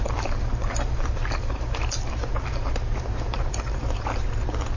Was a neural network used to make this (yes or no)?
yes